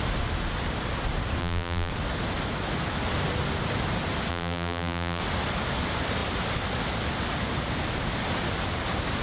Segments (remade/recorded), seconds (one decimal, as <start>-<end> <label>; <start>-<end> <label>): 0.0-1.4 recorded; 1.4-1.9 remade; 1.9-4.3 recorded; 4.3-5.2 remade; 5.2-9.2 recorded